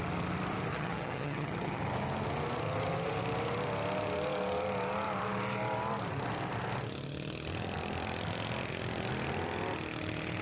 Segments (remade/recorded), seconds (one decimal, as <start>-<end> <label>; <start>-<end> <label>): 0.0-0.7 recorded; 0.7-1.8 remade; 1.8-10.4 recorded